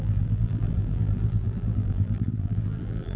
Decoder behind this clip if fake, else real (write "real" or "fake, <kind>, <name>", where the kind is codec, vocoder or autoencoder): fake, vocoder, BigVGAN v2